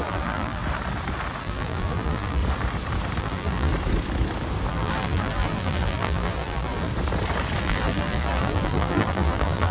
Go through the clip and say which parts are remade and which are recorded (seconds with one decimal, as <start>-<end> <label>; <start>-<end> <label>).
0.0-0.6 remade; 0.6-1.4 recorded; 1.4-2.4 remade; 2.4-3.2 recorded; 3.2-3.7 remade; 3.7-4.7 recorded; 4.7-6.9 remade; 6.9-7.6 recorded; 7.6-9.7 remade